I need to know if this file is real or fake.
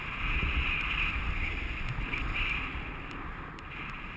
real